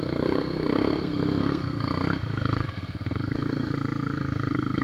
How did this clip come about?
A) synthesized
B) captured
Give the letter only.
A